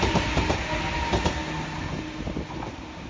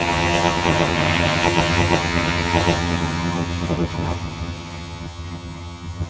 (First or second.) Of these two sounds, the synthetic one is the second